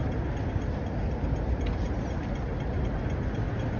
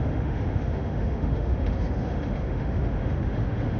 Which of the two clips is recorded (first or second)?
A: first